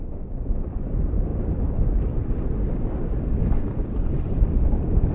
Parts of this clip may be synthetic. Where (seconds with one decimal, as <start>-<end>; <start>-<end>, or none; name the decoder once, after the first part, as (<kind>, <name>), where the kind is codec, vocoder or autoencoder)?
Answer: none